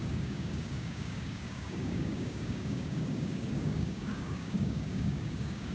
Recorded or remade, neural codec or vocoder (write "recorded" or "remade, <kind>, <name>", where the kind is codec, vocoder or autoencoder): remade, codec, DAC